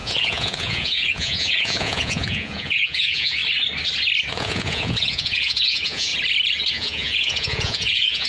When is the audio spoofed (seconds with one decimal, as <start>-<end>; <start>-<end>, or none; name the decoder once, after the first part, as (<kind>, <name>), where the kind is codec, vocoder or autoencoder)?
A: 0.0-3.4 (vocoder, Vocos); 4.3-6.1; 6.7-8.3